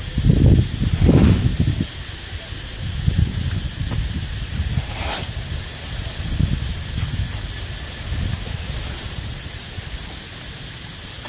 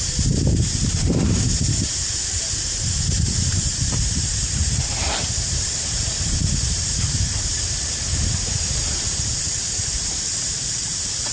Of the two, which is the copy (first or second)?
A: second